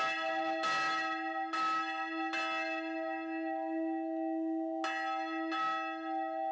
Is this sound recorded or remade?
recorded